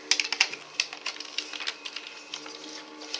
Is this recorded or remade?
recorded